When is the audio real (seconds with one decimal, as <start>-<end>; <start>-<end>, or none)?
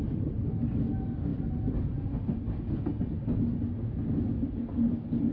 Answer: 0.0-5.3